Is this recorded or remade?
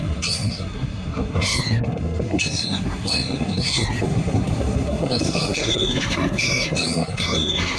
remade